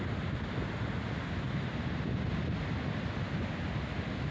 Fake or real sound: real